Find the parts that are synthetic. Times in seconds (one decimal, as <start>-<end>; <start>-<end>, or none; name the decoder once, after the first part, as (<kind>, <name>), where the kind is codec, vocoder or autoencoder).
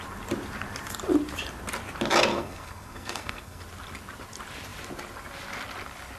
2.3-3.6 (codec, SNAC)